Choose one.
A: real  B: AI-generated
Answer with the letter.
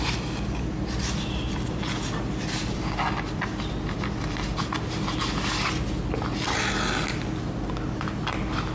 A